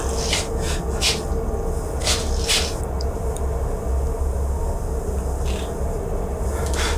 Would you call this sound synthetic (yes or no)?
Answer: no